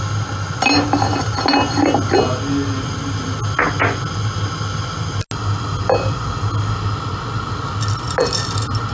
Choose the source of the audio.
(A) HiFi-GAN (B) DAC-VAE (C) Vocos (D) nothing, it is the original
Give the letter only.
D